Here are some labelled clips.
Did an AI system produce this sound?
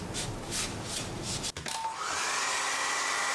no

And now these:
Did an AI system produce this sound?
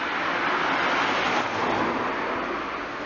no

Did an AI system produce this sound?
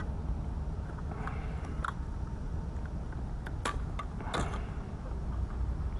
no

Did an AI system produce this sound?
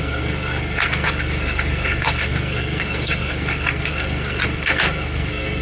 yes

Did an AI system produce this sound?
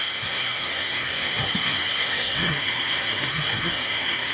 yes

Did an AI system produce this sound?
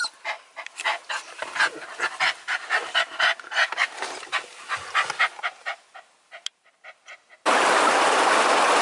no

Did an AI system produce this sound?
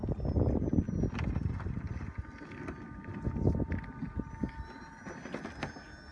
no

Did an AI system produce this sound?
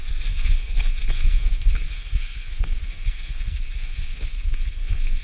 yes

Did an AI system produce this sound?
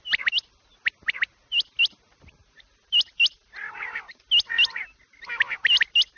no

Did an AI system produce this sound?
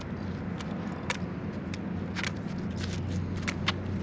no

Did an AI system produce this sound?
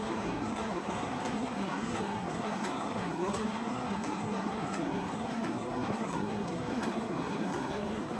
yes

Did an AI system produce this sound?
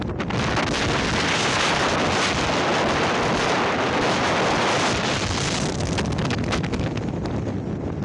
no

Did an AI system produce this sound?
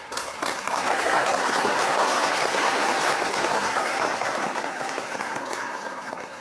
yes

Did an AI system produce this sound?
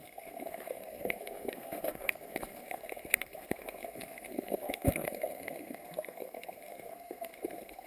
yes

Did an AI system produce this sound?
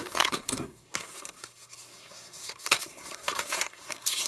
yes